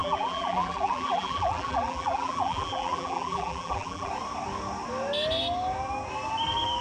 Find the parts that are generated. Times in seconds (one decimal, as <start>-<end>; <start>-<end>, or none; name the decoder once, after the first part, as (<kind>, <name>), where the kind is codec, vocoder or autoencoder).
0.0-4.1 (vocoder, BigVGAN v2)